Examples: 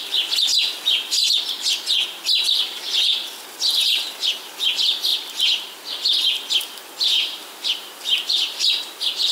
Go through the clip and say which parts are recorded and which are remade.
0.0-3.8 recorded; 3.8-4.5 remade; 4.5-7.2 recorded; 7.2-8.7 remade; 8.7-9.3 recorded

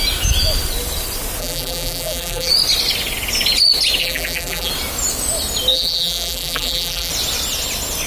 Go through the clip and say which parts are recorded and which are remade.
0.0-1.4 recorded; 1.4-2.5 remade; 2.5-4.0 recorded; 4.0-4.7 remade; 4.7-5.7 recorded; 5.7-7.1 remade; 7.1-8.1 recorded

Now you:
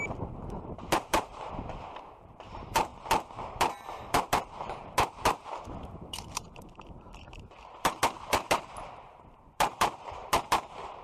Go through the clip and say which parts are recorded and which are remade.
0.0-2.9 remade; 2.9-3.5 recorded; 3.5-11.0 remade

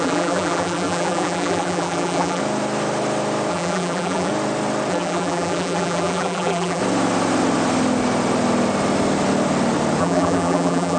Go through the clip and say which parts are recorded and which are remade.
0.0-2.4 remade; 2.4-3.5 recorded; 3.5-4.3 remade; 4.3-4.9 recorded; 4.9-6.8 remade; 6.8-10.0 recorded; 10.0-11.0 remade

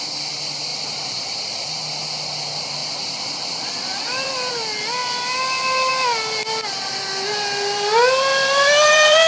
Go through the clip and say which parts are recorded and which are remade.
0.0-0.7 recorded; 0.7-1.7 remade; 1.7-2.8 recorded; 2.8-4.5 remade; 4.5-8.3 recorded; 8.3-9.3 remade